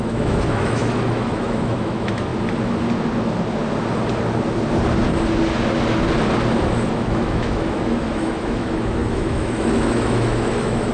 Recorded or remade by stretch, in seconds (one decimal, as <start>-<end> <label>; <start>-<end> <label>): 0.0-2.3 remade; 2.3-6.9 recorded; 6.9-10.9 remade